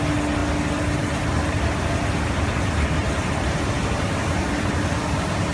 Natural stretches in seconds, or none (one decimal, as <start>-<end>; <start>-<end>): 0.0-3.0